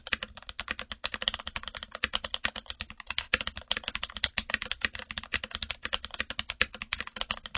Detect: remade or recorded recorded